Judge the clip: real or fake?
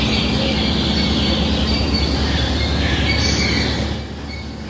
real